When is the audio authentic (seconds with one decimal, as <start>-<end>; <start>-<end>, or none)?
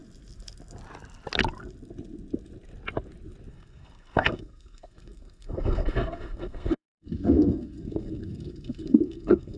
0.0-3.5